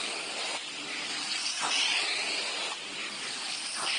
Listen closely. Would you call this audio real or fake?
real